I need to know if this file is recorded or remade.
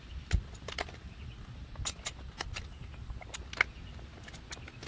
recorded